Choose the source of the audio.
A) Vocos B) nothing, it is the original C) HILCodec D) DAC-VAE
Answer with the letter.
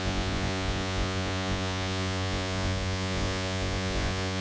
A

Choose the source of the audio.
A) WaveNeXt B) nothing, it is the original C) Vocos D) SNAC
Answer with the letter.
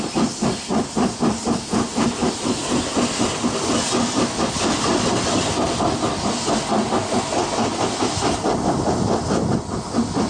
B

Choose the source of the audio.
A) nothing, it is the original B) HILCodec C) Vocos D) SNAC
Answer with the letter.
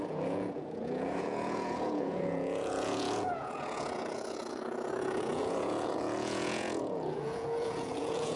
C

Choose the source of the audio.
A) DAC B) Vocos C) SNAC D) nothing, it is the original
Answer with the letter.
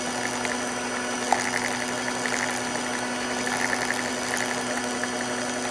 D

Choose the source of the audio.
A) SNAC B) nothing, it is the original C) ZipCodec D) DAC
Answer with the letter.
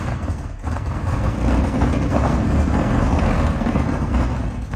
A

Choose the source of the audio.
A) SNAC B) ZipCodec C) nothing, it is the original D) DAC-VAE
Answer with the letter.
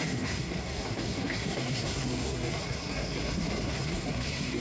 A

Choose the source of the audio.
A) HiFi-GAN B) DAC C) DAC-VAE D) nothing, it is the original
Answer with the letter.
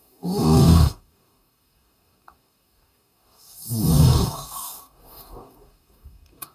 B